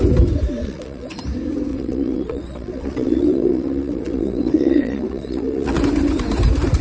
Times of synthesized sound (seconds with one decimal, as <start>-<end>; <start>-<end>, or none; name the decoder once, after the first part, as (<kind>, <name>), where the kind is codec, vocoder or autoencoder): 0.6-1.2 (vocoder, WaveNeXt); 1.7-5.8